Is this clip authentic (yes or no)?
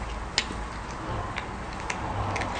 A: yes